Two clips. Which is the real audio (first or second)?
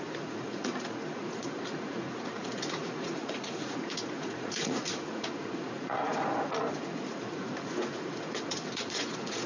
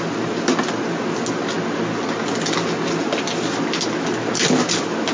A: second